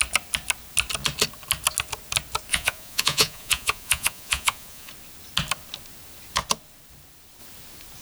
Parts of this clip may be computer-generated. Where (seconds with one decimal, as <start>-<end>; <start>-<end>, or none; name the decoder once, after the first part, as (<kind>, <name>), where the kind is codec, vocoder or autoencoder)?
2.5-4.9 (vocoder, Vocos)